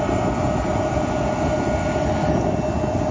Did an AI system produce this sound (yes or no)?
no